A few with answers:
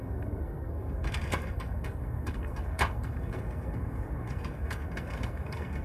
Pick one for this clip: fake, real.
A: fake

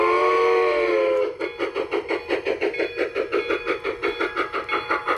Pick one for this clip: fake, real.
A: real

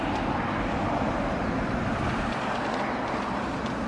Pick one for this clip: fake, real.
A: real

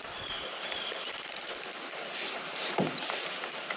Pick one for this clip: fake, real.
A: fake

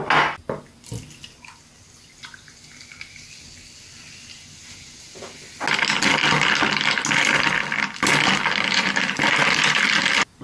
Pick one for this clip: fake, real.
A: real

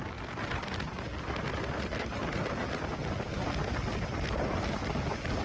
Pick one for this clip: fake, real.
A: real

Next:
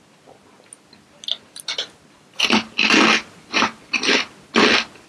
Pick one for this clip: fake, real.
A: real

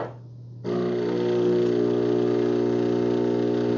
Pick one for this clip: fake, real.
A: real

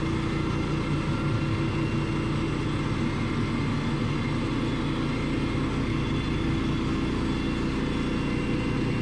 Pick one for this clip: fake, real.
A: real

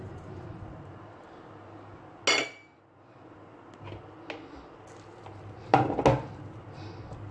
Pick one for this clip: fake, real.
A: real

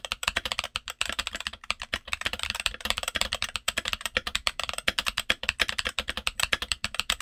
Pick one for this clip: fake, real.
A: fake